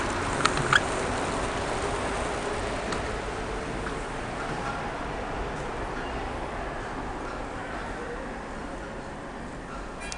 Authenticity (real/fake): real